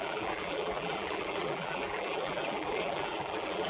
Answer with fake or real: fake